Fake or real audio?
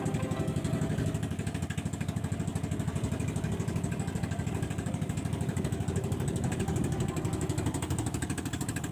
fake